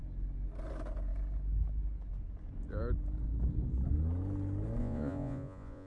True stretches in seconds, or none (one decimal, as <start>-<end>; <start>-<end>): 0.0-4.8